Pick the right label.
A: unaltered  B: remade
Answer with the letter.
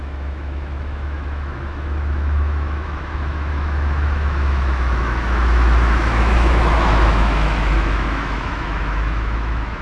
B